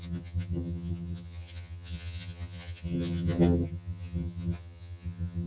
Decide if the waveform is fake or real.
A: fake